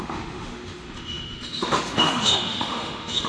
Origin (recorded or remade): remade